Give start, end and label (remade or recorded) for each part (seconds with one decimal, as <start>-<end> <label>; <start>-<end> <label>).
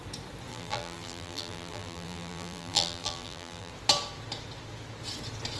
0.0-0.5 recorded; 0.5-3.7 remade; 3.7-5.6 recorded